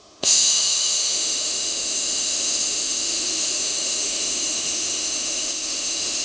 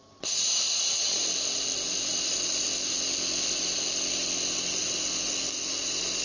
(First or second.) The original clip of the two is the second